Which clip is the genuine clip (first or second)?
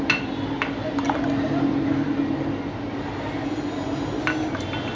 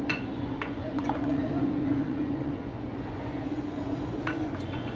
first